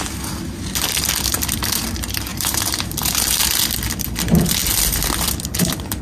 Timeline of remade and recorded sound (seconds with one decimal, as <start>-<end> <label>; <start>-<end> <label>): 0.0-2.3 recorded; 2.3-3.2 remade; 3.2-6.0 recorded